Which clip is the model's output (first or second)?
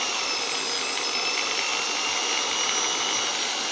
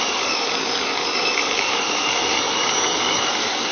second